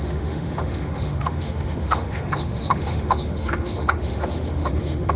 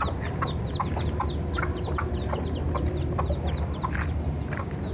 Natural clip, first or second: second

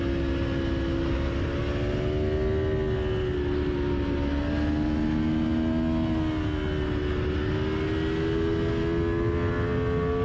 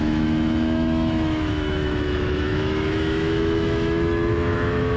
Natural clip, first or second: first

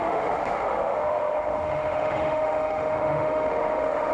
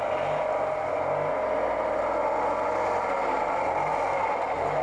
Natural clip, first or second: second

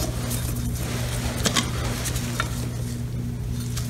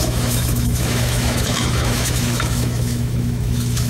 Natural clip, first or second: first